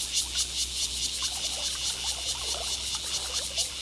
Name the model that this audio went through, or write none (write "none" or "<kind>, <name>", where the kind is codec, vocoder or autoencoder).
none